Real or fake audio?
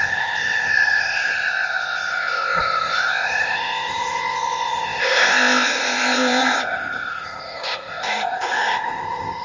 fake